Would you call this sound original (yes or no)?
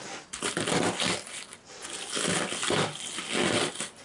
yes